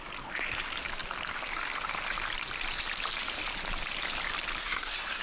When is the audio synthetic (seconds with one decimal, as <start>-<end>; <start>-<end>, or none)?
4.6-5.2